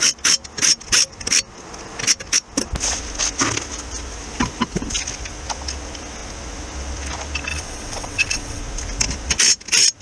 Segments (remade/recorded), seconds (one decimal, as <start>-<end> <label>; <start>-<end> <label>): 0.0-7.5 recorded; 7.5-8.6 remade; 8.6-10.0 recorded